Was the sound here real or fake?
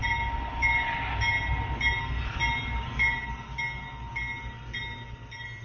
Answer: real